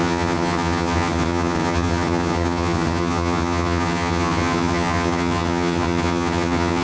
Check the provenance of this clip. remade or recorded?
remade